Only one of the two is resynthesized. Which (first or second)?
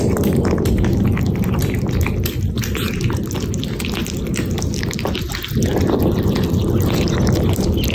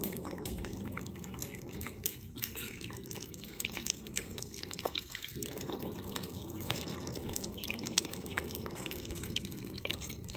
second